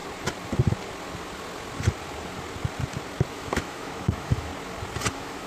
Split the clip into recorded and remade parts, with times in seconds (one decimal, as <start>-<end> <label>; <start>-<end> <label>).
0.0-3.3 recorded; 3.3-4.5 remade; 4.5-5.1 recorded; 5.1-5.5 remade